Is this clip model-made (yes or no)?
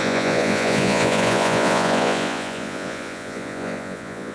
yes